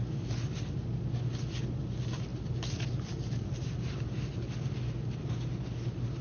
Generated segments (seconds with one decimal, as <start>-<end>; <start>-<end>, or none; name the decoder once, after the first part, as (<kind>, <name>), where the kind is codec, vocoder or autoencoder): none